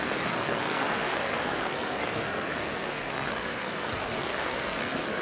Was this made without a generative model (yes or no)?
no